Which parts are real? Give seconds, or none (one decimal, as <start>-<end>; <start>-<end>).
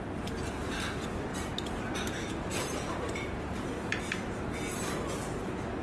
0.0-2.5; 3.6-5.8